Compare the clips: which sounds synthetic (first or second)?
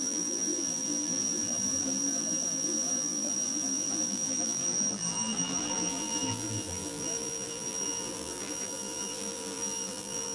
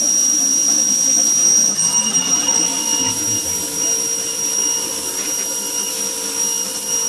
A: first